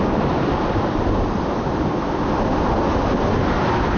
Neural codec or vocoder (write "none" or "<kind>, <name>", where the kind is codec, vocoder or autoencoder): none